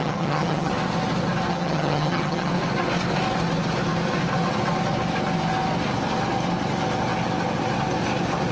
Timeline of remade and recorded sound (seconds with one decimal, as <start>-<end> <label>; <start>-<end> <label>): 0.0-0.7 remade; 0.7-1.5 recorded; 1.5-2.5 remade; 2.5-8.5 recorded